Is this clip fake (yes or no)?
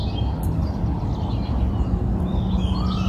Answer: no